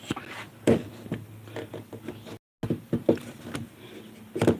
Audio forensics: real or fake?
real